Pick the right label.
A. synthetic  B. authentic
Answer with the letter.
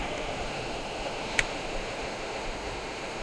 A